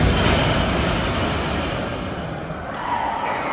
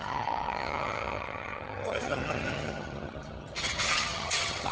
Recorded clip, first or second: first